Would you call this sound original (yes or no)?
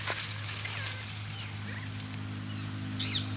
yes